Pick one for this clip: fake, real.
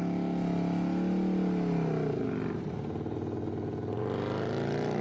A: real